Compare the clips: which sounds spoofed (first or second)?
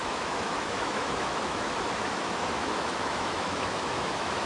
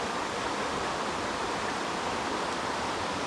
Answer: first